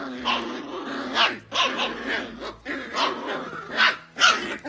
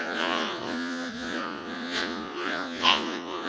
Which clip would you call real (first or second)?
first